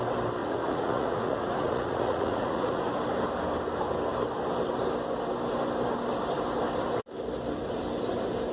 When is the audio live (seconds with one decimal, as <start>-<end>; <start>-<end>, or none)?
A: 0.0-0.4; 2.9-8.5